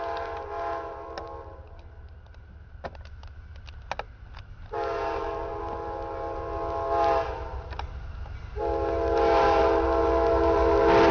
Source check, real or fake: real